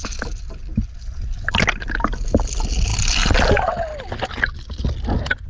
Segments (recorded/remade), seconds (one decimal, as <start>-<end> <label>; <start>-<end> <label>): 0.0-5.5 recorded